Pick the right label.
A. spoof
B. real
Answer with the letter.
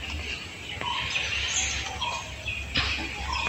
B